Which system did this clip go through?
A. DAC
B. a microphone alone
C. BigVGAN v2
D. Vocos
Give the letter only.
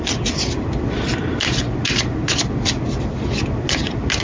B